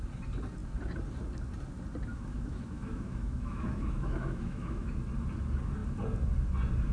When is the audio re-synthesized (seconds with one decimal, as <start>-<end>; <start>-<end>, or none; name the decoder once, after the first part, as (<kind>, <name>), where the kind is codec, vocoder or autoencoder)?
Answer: 2.1-4.9 (autoencoder, DAC-VAE)